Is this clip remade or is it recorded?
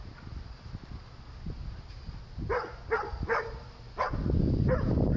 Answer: recorded